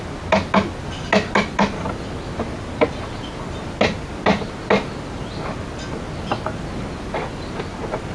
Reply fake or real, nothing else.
real